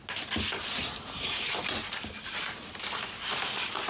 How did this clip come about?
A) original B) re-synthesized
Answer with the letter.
A